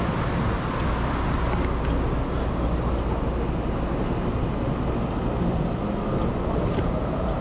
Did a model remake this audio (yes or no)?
no